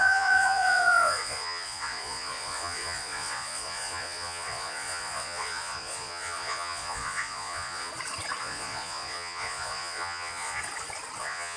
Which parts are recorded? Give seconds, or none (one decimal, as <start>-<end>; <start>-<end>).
7.9-8.4; 10.6-11.2

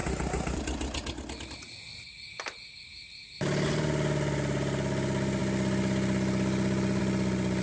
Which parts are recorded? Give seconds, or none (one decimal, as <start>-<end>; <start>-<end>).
0.0-7.6

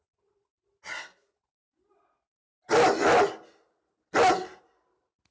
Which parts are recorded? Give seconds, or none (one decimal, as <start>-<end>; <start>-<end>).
0.0-5.3

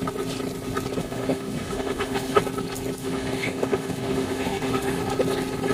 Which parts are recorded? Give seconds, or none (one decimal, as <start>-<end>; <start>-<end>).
0.0-1.0; 2.4-3.0; 5.0-5.7

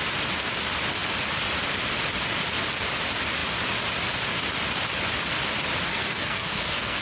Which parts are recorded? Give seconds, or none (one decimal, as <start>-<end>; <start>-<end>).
0.0-5.9

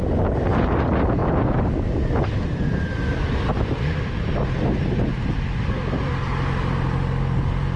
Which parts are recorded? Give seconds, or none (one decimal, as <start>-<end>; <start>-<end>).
0.0-7.8

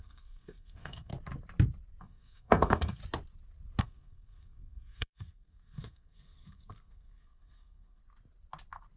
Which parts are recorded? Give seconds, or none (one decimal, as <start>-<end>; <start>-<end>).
1.1-2.0; 3.0-3.8; 8.0-9.0

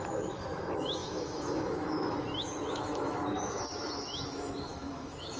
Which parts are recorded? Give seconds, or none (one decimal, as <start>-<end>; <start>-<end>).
none